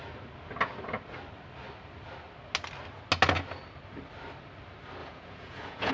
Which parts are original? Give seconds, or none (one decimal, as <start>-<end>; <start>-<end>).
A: 0.0-5.0